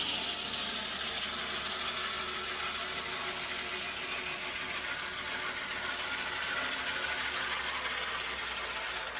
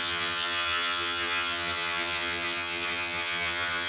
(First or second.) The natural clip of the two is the first